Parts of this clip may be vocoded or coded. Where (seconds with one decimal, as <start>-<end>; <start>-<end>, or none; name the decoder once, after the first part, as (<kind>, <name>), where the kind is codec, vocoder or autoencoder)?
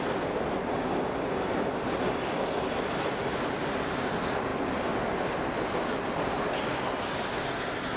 none